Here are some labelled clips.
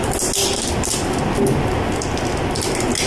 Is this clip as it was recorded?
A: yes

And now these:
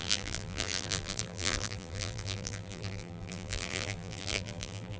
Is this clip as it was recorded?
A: no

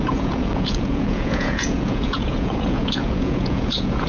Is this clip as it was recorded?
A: no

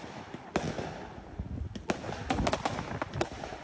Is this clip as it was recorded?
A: yes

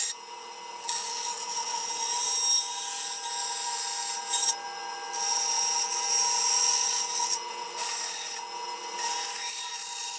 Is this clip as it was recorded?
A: yes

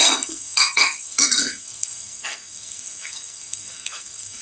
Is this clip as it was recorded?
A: no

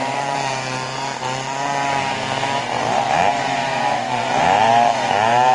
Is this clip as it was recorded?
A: no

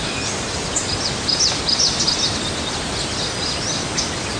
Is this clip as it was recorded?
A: yes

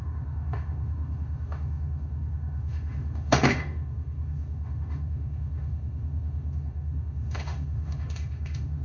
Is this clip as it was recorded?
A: no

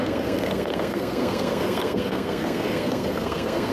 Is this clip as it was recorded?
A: no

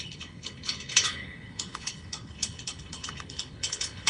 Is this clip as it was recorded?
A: no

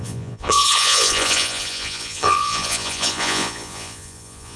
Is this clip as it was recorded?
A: no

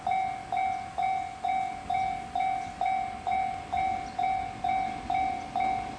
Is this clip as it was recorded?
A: yes